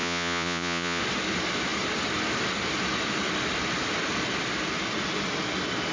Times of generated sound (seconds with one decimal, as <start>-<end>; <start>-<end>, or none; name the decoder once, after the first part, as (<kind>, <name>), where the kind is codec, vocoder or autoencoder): 0.0-1.0 (vocoder, Vocos)